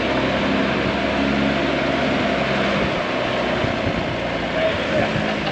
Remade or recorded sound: recorded